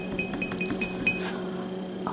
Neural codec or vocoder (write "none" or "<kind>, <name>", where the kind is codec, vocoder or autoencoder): vocoder, BigVGAN v2